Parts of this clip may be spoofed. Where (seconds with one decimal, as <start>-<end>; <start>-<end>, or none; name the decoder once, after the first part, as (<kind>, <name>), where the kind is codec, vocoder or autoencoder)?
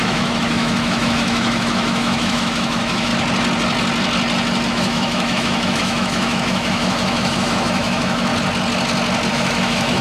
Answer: 0.0-3.1 (autoencoder, DAC-VAE); 4.7-8.3; 9.3-10.0